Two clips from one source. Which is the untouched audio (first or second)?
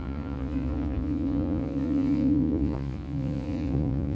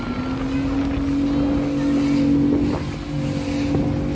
second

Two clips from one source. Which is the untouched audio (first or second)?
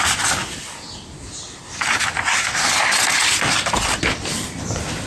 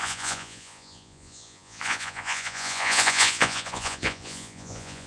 first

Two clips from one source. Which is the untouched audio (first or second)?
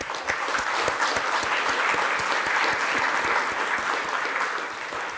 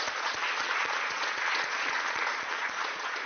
first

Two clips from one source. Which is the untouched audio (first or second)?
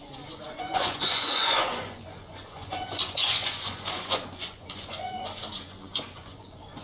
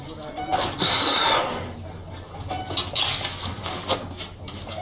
second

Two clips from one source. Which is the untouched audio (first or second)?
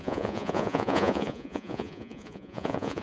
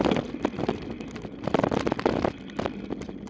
second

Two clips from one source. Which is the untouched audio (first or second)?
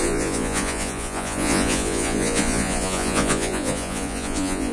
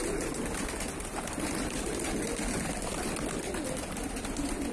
second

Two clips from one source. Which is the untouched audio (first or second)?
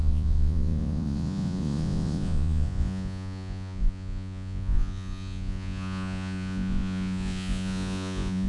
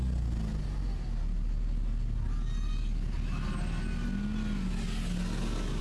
second